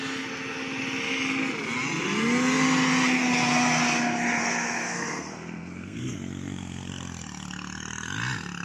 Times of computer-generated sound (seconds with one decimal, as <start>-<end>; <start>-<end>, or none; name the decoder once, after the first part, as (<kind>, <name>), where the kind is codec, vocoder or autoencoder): 4.4-6.9 (codec, SNAC)